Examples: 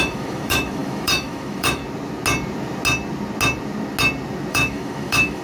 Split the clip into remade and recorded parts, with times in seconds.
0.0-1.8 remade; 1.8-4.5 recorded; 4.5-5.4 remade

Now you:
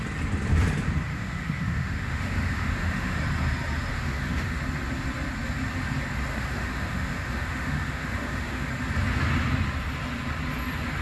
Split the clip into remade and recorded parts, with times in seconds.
0.0-1.1 recorded; 1.1-3.2 remade; 3.2-3.9 recorded; 3.9-4.6 remade; 4.6-6.3 recorded; 6.3-8.7 remade; 8.7-11.0 recorded

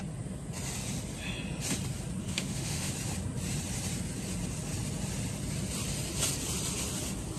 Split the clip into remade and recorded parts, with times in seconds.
0.0-2.2 recorded; 2.2-2.9 remade; 2.9-7.4 recorded